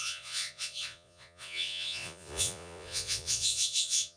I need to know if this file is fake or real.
fake